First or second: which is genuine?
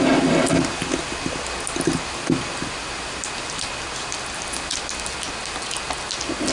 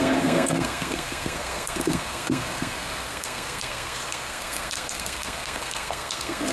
first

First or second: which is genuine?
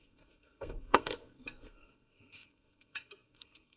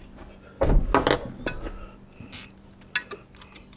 second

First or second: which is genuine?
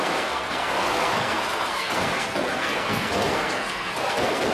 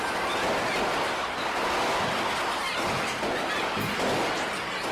second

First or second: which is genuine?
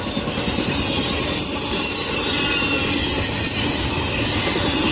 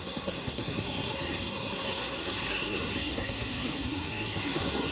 first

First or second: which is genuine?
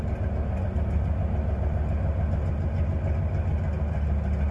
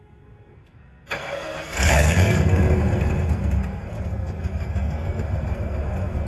first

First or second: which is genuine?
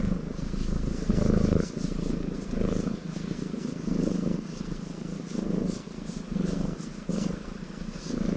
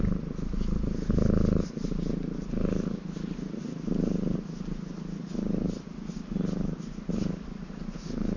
second